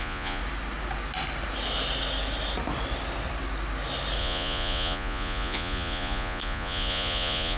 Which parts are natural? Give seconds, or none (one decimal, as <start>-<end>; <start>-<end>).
0.4-4.2